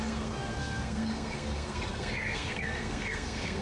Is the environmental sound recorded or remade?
remade